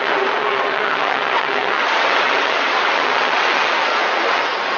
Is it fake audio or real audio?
fake